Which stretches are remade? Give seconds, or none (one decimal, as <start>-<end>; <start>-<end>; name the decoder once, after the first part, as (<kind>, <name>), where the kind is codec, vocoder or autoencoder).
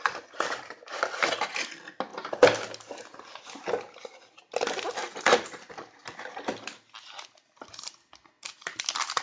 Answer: none